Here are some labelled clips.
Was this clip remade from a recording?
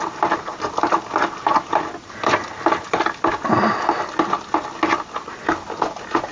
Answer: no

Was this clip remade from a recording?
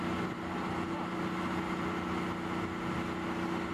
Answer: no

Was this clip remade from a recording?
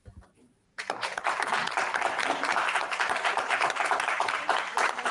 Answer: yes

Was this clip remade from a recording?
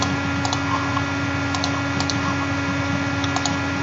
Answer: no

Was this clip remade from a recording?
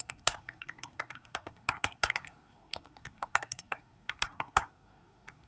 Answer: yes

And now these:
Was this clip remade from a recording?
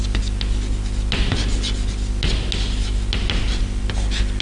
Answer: no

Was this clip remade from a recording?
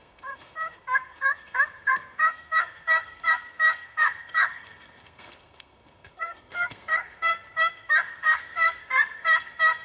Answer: yes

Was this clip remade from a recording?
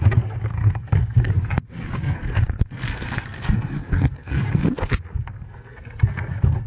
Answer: yes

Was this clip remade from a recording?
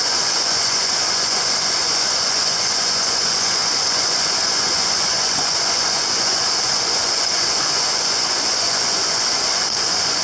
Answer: yes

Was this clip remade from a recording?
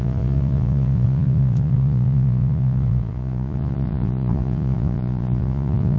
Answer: yes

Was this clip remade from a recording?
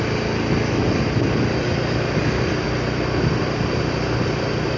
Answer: no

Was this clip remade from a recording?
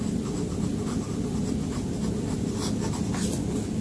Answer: no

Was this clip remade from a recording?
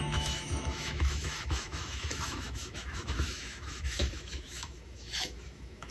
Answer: yes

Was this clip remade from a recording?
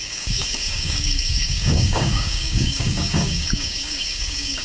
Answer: yes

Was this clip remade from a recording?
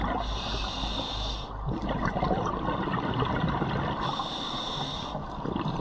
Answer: no